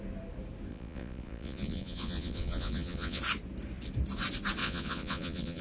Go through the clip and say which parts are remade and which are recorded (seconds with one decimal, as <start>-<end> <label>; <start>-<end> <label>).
0.0-0.7 recorded; 0.7-3.2 remade; 3.2-4.6 recorded; 4.6-5.6 remade